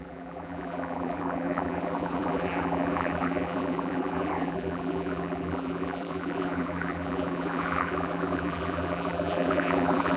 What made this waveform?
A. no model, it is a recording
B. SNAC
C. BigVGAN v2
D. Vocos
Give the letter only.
C